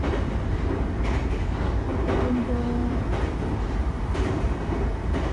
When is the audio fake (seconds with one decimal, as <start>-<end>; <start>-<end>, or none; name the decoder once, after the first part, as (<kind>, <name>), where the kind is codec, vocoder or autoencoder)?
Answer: 2.8-4.5 (vocoder, BigVGAN v2)